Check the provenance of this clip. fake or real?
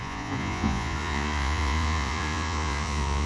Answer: fake